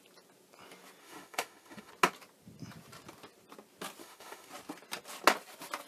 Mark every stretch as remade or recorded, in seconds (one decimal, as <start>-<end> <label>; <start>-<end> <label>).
0.0-1.0 recorded; 1.0-1.9 remade; 1.9-4.0 recorded; 4.0-4.5 remade; 4.5-5.9 recorded